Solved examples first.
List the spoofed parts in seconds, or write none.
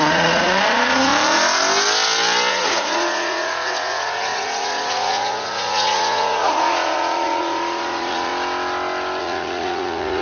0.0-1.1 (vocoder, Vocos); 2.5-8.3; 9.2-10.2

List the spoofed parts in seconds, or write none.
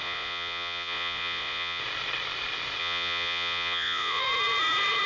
0.0-1.8 (vocoder, Vocos); 2.8-4.2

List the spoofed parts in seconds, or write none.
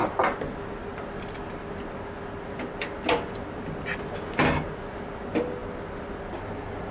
none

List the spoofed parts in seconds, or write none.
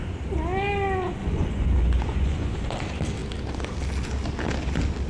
1.2-2.7 (vocoder, Vocos)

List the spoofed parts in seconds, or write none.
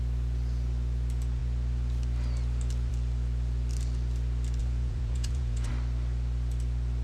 4.6-5.7 (vocoder, Vocos)